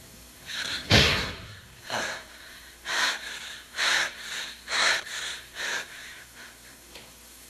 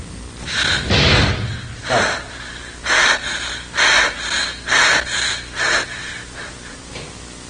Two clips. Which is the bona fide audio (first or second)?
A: second